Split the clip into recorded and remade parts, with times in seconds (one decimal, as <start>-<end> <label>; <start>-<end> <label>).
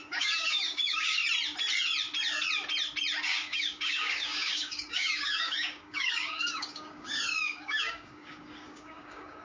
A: 0.0-1.2 remade; 1.2-3.2 recorded; 3.2-9.4 remade